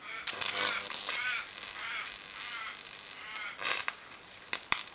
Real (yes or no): yes